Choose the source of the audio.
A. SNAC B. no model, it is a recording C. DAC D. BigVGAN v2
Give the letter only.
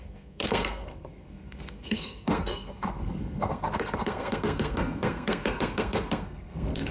A